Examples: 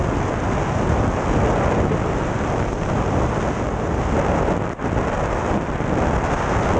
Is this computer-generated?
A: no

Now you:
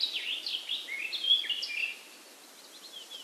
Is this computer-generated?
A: no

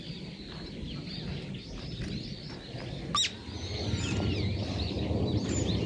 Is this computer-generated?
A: no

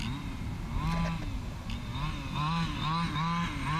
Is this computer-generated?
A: no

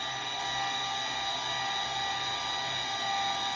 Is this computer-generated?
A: no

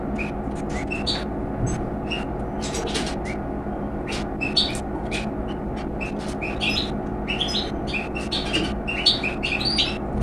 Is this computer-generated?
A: no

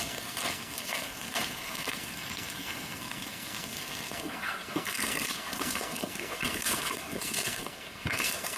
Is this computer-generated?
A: yes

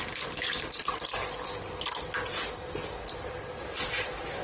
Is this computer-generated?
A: no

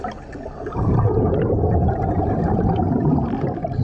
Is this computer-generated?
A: no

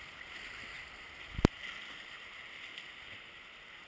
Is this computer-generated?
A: no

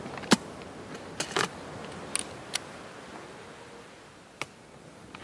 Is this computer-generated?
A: no